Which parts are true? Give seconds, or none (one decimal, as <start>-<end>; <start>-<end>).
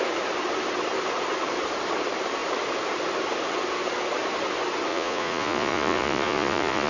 0.0-4.9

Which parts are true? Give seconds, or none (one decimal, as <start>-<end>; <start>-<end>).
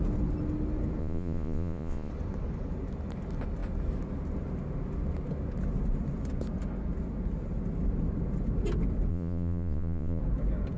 0.0-1.0; 2.1-9.1; 10.2-10.8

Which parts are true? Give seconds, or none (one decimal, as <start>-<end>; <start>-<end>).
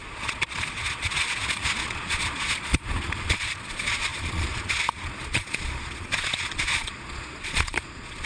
none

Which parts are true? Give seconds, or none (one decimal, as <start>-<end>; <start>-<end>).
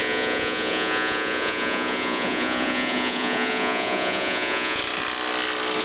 4.8-5.8